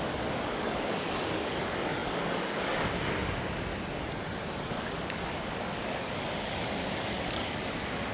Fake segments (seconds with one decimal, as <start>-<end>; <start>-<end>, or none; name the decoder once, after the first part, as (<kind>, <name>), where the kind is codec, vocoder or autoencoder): 0.0-3.7 (codec, DAC); 4.7-8.1